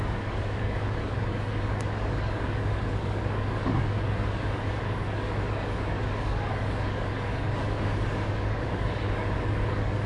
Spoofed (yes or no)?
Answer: yes